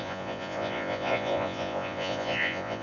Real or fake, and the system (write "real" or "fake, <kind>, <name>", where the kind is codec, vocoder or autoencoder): fake, vocoder, Vocos